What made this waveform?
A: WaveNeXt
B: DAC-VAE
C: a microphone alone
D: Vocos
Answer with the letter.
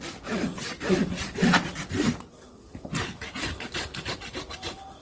C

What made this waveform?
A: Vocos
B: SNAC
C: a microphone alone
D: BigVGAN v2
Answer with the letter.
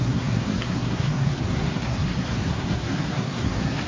B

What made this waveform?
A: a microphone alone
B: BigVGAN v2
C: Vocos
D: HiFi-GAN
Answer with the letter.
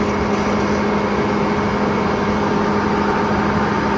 A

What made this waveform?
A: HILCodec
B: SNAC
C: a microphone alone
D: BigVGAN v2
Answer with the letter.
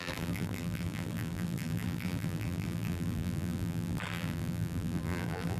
D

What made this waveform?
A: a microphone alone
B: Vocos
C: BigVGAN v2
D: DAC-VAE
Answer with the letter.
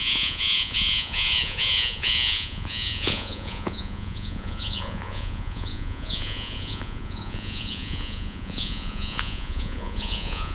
B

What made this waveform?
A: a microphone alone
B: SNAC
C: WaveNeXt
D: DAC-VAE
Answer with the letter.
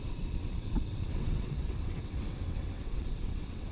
C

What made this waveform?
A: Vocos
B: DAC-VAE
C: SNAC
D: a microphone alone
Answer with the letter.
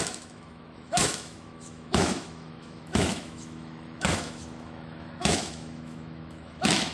B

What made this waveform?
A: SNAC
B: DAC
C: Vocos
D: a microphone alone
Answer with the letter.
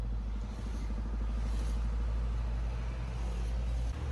D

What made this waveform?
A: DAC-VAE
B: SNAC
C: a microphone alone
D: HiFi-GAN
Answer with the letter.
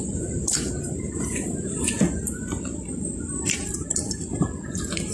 C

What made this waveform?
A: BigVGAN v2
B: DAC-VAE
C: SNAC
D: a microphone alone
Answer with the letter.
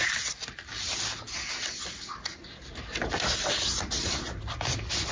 D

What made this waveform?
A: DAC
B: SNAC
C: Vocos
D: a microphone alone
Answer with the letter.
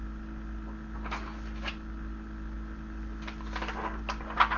D